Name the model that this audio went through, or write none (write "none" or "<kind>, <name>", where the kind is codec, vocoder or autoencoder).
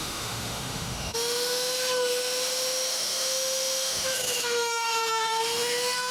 autoencoder, DAC-VAE